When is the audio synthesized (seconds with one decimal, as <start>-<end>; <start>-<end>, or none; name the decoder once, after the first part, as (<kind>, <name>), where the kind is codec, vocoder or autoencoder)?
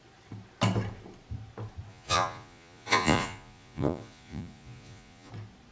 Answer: 1.9-5.3 (vocoder, Vocos)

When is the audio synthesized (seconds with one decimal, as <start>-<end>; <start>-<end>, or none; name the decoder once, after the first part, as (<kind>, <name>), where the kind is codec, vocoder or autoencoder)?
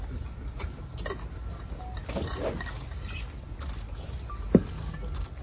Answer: none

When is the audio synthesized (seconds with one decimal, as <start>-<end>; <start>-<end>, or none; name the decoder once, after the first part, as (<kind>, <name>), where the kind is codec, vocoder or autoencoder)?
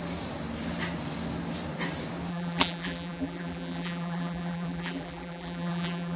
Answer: 2.3-6.2 (vocoder, BigVGAN v2)